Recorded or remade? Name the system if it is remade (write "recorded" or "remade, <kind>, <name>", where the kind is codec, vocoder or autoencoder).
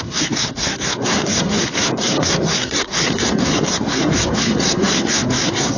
remade, codec, SNAC